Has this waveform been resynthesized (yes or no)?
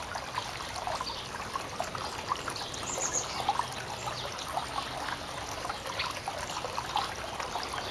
no